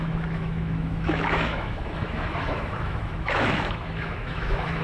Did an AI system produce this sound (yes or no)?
yes